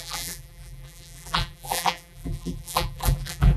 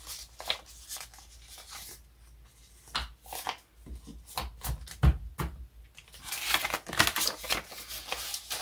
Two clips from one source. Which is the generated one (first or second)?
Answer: first